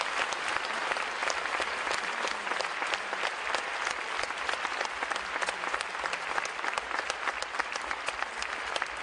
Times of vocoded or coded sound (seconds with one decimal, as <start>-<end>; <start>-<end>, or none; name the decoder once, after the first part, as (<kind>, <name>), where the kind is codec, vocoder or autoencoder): none